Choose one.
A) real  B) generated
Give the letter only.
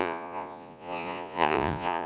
B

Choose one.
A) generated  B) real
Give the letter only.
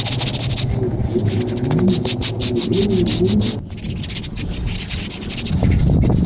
B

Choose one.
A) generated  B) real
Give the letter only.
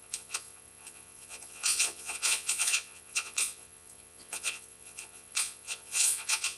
A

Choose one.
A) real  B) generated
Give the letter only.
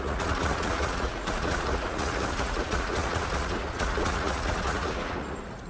B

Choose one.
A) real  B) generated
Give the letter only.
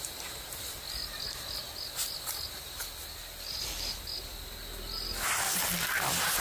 A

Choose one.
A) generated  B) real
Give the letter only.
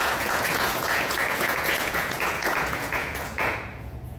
A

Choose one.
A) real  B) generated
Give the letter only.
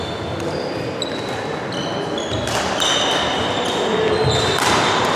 A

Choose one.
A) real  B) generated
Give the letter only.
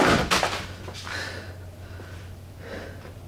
A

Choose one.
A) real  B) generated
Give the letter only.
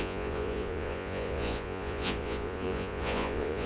B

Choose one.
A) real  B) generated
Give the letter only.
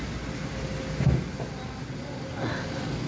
A